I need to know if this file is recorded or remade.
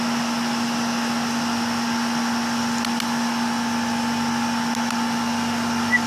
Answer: recorded